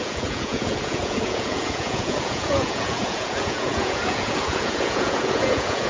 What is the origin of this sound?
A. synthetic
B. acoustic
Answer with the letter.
A